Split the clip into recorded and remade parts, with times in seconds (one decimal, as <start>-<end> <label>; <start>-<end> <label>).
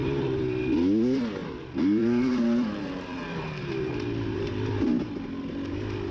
0.0-0.6 remade; 0.6-1.4 recorded; 1.4-4.9 remade; 4.9-6.1 recorded